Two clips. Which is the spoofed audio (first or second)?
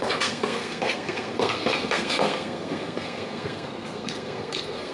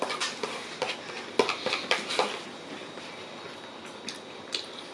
first